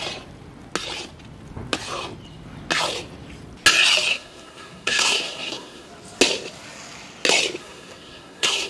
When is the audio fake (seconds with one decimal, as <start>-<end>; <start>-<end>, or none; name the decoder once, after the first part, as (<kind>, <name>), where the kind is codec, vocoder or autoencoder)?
4.1-5.9 (codec, SNAC); 7.6-8.7